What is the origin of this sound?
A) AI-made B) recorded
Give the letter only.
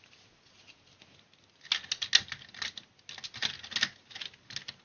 B